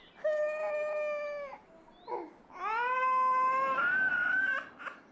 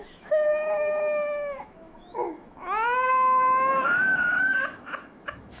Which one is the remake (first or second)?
second